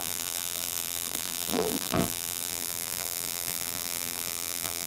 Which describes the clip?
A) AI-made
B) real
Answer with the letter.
A